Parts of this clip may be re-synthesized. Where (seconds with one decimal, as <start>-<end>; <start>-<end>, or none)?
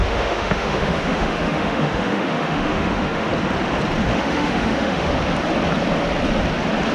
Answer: 0.0-3.3; 4.1-5.1